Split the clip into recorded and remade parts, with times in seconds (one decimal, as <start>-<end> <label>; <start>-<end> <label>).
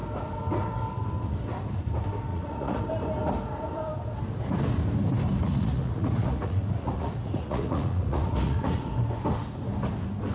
0.0-2.3 recorded; 2.3-2.8 remade; 2.8-5.4 recorded; 5.4-8.9 remade; 8.9-10.3 recorded